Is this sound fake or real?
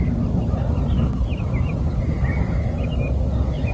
real